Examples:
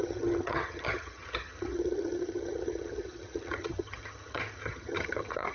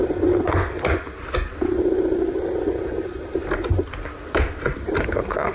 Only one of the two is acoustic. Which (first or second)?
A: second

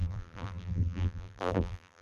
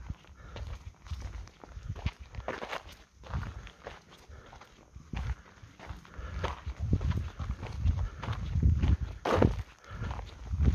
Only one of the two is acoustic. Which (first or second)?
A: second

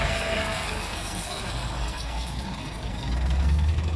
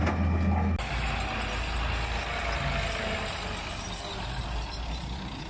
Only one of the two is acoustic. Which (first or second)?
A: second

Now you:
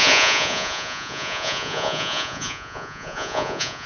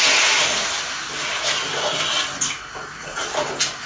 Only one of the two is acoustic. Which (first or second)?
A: second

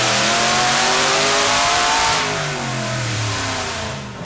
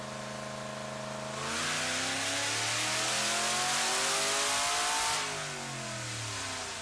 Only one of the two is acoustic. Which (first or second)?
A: second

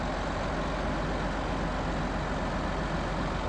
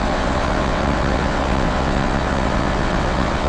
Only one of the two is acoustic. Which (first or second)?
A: first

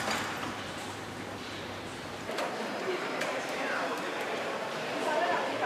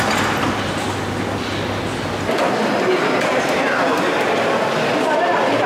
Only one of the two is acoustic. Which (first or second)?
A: second